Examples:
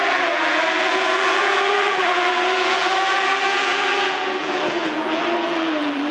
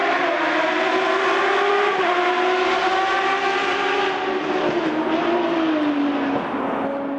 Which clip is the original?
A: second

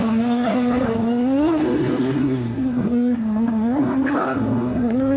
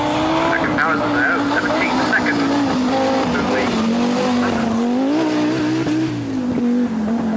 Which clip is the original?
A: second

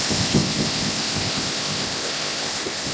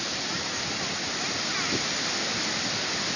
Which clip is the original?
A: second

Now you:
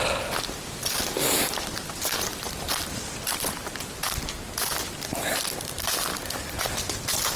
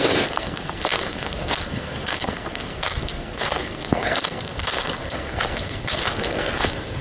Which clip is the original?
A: first